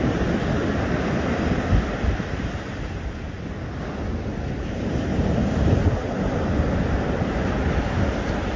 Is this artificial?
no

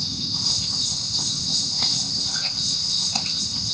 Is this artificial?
yes